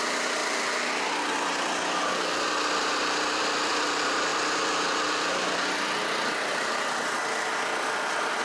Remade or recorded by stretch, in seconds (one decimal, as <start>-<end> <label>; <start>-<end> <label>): 0.0-0.4 remade; 0.4-1.1 recorded; 1.1-8.4 remade